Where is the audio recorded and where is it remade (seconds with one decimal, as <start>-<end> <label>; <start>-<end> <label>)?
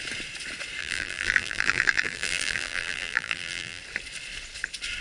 0.0-0.8 recorded; 0.8-3.8 remade; 3.8-5.0 recorded